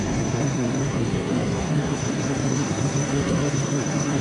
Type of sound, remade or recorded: remade